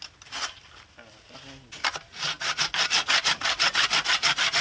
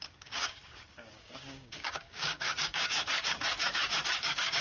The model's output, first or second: second